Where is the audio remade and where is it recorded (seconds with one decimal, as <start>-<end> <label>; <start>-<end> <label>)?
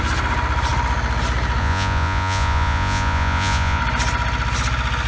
0.0-1.6 recorded; 1.6-3.8 remade; 3.8-5.1 recorded